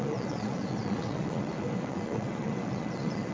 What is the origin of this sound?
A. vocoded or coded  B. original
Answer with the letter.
A